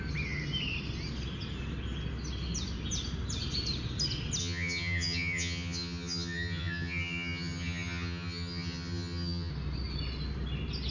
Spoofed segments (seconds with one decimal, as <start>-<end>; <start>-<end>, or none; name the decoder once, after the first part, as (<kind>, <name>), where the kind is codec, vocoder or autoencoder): 4.4-9.5 (vocoder, HiFi-GAN)